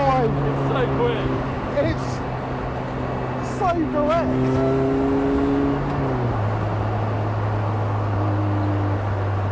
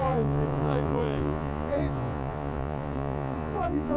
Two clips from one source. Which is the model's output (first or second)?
second